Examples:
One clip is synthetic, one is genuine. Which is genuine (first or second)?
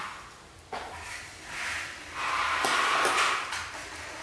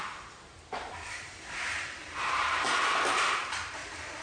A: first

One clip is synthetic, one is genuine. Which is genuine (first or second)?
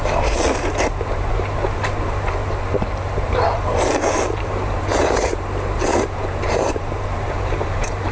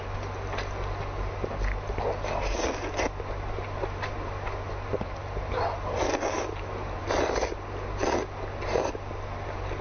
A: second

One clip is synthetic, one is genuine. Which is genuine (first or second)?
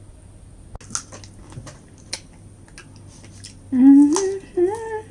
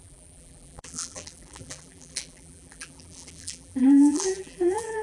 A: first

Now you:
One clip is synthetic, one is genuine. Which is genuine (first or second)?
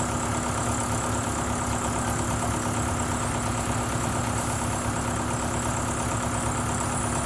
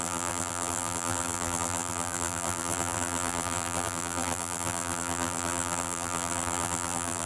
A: first